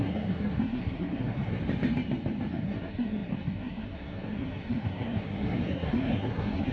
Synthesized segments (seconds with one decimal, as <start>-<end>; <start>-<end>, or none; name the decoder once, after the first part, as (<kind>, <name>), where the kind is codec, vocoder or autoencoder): 0.0-1.6 (codec, SNAC); 2.5-6.7